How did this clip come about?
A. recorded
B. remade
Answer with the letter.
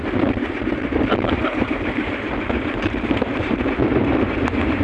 B